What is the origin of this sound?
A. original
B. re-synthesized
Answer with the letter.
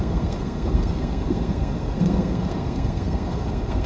B